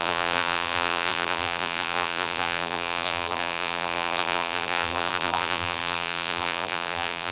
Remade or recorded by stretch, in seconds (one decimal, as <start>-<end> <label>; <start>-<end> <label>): 0.0-7.3 remade